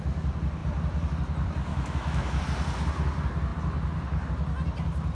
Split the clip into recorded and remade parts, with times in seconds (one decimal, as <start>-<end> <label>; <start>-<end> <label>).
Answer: 0.0-1.7 recorded; 1.7-2.4 remade; 2.4-5.1 recorded